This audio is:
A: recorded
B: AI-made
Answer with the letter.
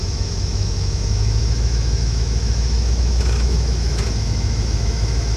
B